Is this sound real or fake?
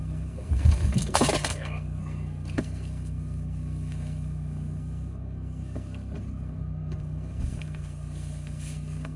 fake